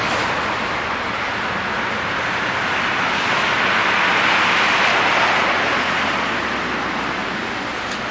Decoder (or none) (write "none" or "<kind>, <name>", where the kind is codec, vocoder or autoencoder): none